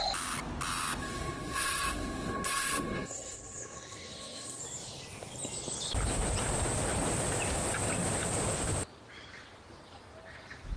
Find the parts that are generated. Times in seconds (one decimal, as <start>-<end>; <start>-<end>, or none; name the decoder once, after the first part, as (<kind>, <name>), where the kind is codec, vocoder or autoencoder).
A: 1.0-4.6 (codec, SNAC)